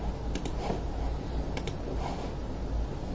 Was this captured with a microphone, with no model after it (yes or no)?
yes